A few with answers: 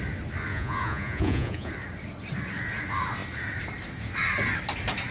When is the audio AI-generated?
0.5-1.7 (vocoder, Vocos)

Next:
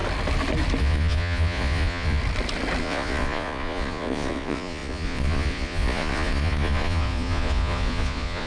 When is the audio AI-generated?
0.8-2.2 (vocoder, Vocos); 2.8-8.5